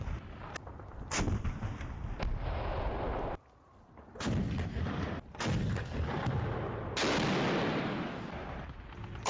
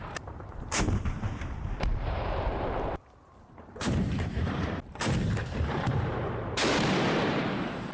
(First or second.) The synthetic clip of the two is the second